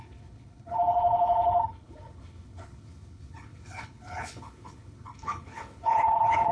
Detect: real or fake fake